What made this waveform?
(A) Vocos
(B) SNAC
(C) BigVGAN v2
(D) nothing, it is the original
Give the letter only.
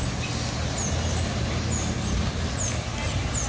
D